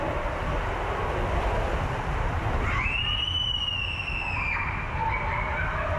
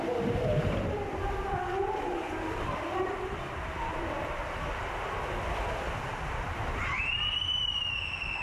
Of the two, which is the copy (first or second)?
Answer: second